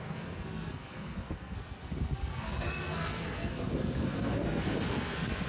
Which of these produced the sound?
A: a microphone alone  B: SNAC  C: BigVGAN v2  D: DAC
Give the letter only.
B